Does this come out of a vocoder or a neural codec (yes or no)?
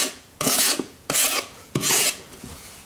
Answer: yes